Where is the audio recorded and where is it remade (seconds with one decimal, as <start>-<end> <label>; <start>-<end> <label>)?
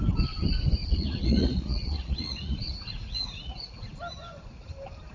0.0-0.8 recorded; 0.8-3.9 remade; 3.9-5.1 recorded